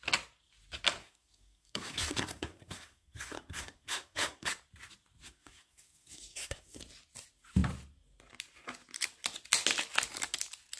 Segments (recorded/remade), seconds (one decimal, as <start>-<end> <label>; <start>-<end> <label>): 0.0-1.0 recorded; 1.0-4.5 remade; 4.5-5.2 recorded; 5.2-6.8 remade; 6.8-10.8 recorded